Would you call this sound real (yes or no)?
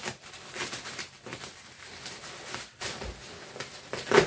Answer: yes